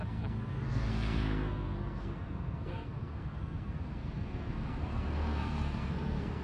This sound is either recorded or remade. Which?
remade